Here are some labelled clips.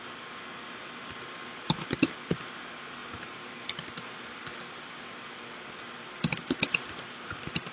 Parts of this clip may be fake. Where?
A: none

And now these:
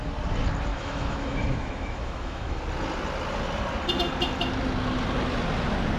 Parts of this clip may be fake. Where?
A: 0.7-2.6 (autoencoder, DAC-VAE)

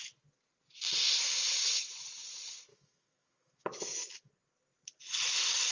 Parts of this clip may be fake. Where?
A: 2.7-4.3 (autoencoder, DAC-VAE)